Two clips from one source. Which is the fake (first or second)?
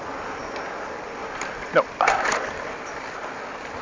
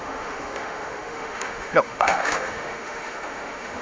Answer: second